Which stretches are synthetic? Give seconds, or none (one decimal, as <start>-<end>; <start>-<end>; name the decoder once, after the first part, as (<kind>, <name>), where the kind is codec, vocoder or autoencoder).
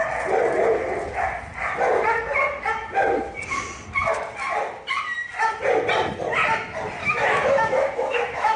7.0-8.6 (autoencoder, DAC-VAE)